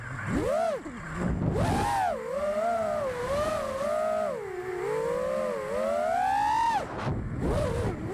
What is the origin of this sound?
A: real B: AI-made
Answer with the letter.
A